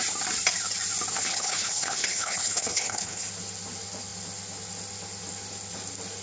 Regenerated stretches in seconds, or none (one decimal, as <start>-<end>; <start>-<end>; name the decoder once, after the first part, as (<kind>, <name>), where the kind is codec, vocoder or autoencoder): 1.3-3.3 (codec, HILCodec)